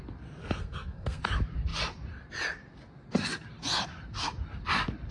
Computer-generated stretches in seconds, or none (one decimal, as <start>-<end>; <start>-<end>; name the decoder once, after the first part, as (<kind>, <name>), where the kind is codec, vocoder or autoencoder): 0.4-1.2 (codec, SNAC)